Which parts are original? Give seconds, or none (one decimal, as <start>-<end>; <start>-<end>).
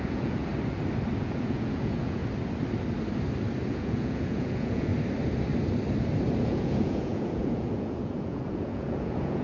0.5-1.2; 2.2-3.7; 4.9-6.4